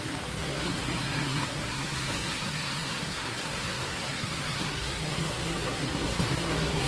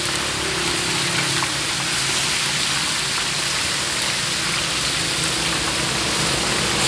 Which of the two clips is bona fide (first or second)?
second